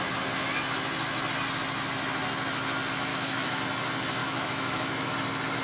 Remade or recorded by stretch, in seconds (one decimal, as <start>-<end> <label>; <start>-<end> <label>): 0.0-3.1 recorded; 3.1-3.6 remade; 3.6-4.2 recorded; 4.2-5.1 remade; 5.1-5.6 recorded